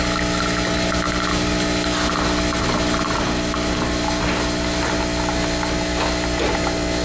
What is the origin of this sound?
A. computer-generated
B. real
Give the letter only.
B